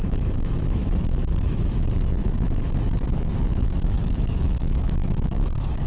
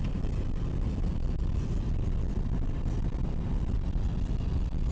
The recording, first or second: second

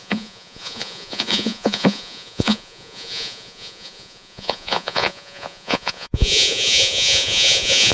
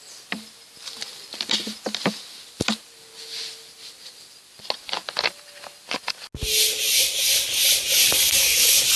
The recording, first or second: second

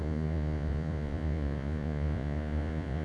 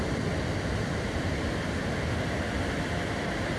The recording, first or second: second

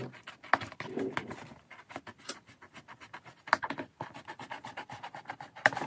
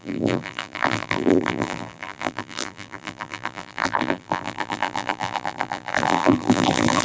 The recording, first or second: first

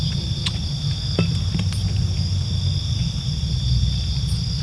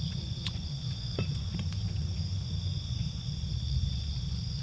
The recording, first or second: first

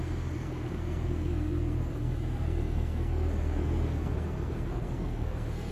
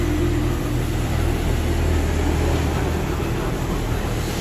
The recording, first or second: second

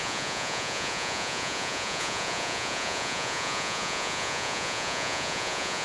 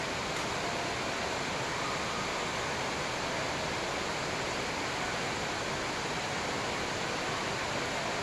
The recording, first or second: second